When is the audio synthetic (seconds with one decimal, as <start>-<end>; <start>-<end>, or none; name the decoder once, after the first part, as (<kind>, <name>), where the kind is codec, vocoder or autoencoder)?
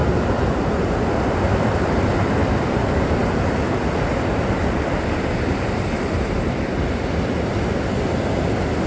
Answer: 2.4-7.5 (vocoder, BigVGAN v2)